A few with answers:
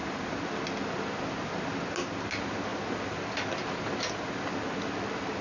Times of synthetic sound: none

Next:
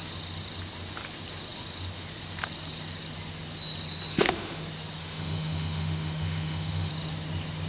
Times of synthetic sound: 4.1-4.6; 5.0-6.9

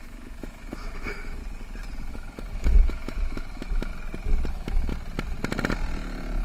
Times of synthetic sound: 0.0-1.4; 2.1-3.9; 4.5-4.9

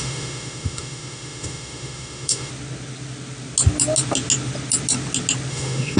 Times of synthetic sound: 0.0-2.5; 5.5-6.0

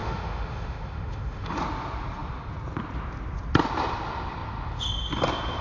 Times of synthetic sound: 0.0-1.6

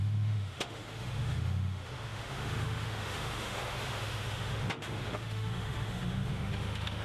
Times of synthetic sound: 0.0-7.0